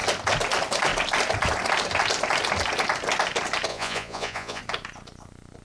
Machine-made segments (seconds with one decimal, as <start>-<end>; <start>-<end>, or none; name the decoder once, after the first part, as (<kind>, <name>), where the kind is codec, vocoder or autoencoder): 3.7-4.6 (vocoder, Vocos)